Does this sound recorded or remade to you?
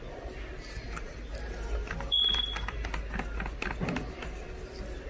recorded